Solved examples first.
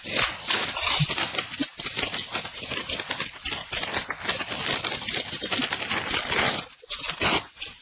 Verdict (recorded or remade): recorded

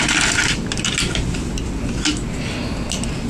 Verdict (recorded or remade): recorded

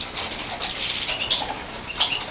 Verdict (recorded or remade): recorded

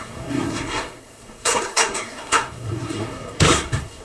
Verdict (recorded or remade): remade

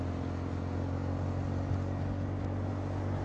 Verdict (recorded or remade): recorded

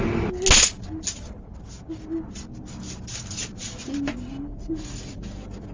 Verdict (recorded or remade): recorded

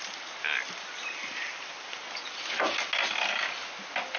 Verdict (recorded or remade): recorded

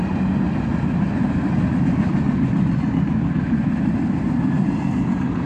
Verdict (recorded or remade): recorded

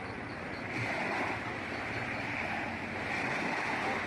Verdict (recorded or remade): recorded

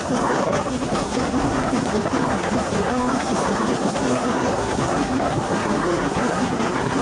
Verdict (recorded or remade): remade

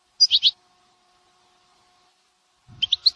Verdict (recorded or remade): recorded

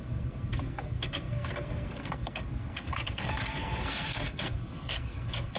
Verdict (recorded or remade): remade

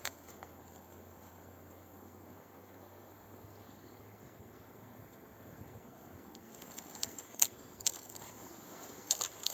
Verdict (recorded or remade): remade